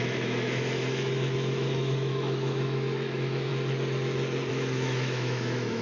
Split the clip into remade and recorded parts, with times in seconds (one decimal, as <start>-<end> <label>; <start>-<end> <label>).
0.0-3.5 remade; 3.5-4.5 recorded; 4.5-5.8 remade

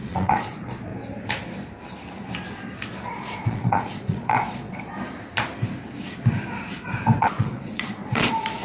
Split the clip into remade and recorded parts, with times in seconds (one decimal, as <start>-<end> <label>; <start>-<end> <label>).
0.0-0.9 remade; 0.9-3.1 recorded; 3.1-4.9 remade; 4.9-7.2 recorded; 7.2-8.6 remade

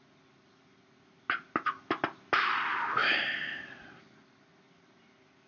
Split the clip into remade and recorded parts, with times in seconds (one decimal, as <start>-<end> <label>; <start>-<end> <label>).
0.0-5.5 recorded